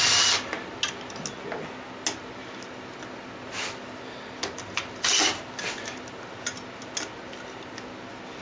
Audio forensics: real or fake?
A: real